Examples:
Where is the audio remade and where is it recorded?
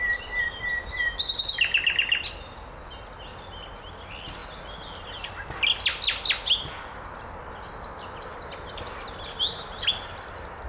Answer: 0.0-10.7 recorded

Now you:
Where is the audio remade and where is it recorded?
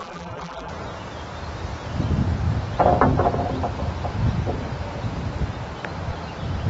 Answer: 0.0-0.7 remade; 0.7-6.7 recorded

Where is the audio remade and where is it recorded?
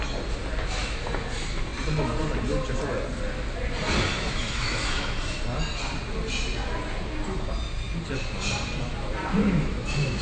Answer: 0.0-4.1 recorded; 4.1-5.4 remade; 5.4-9.4 recorded; 9.4-10.2 remade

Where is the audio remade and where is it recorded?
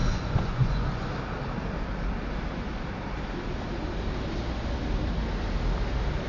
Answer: 0.0-1.1 remade; 1.1-6.3 recorded